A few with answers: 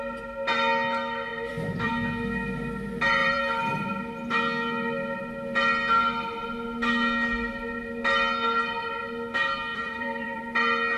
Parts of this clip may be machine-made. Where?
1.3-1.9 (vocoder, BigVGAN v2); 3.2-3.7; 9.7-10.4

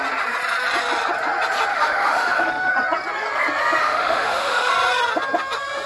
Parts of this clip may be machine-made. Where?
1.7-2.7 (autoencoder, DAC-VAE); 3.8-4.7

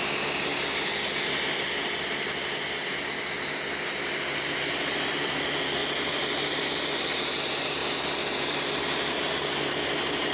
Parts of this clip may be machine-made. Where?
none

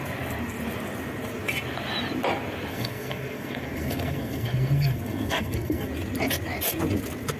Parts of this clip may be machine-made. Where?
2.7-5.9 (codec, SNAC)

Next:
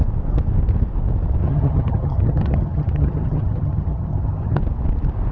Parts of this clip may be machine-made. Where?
1.4-4.6 (vocoder, HiFi-GAN)